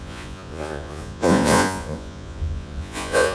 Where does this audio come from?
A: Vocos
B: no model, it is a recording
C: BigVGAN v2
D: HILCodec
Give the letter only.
A